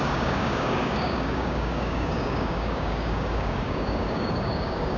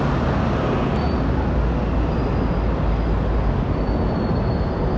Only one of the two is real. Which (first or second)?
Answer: second